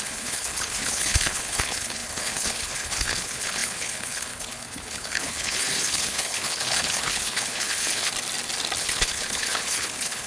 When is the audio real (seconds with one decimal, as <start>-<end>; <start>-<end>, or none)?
8.1-8.8